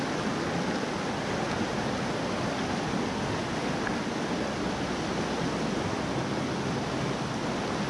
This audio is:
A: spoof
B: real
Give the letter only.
B